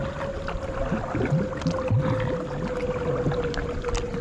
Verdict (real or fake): real